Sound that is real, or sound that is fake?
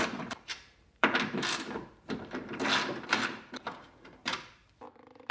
fake